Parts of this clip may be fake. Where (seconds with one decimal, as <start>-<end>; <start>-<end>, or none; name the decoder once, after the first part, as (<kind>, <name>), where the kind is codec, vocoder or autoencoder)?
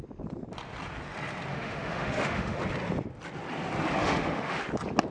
1.5-2.6 (autoencoder, DAC-VAE); 4.0-4.6